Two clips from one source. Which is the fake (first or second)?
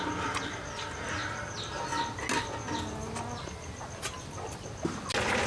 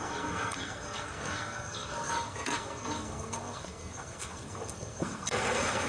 second